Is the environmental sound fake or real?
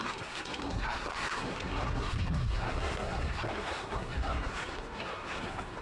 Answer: fake